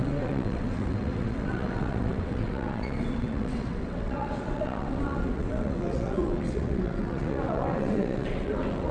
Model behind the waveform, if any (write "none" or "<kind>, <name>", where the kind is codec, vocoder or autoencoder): vocoder, WaveNeXt